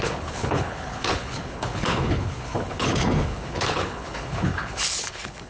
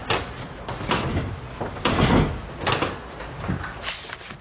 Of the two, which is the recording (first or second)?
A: second